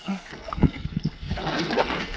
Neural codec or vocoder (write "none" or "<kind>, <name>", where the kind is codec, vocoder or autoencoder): codec, SNAC